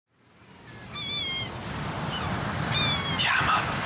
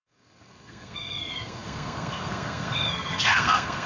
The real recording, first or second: first